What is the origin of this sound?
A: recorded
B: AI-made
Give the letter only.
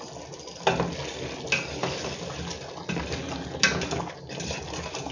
A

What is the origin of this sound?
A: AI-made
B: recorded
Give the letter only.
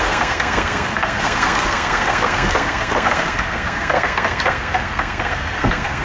A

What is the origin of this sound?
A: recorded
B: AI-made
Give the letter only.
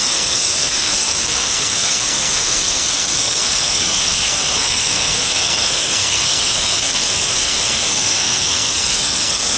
B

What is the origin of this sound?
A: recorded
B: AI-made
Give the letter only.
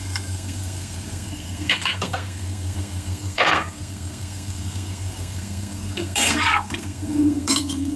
B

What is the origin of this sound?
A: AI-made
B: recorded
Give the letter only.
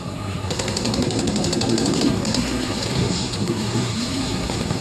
A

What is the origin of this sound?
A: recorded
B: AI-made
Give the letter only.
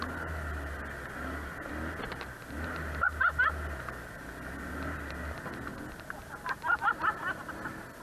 A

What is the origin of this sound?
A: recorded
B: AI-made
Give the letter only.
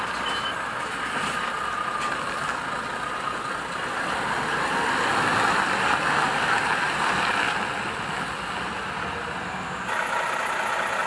A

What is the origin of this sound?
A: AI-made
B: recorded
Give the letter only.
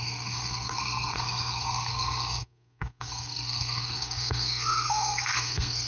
A